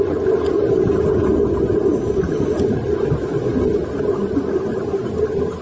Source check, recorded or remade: recorded